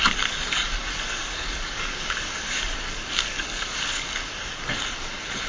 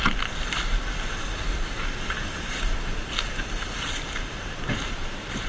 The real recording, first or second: second